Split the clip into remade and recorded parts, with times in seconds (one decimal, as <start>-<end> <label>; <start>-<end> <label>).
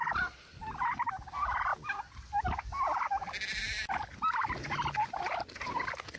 0.0-6.2 recorded